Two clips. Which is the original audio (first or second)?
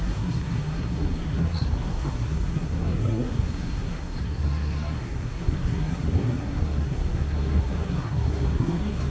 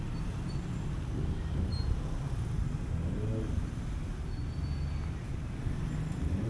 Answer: second